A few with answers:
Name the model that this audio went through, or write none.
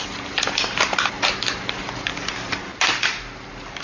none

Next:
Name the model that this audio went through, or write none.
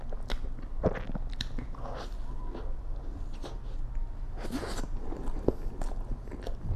none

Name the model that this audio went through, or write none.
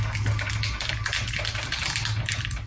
none